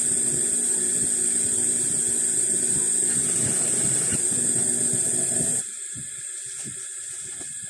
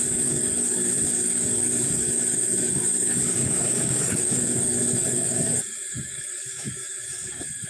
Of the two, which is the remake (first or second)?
second